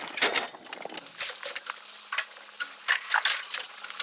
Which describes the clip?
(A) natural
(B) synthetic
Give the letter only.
A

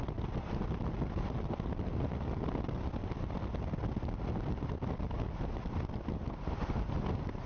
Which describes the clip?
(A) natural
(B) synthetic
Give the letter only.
A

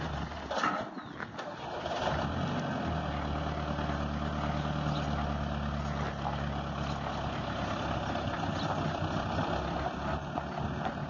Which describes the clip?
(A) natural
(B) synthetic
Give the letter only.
A